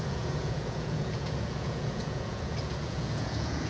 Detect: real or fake fake